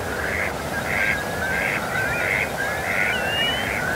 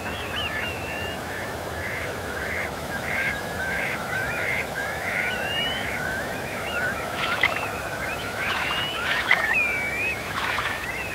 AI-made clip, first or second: second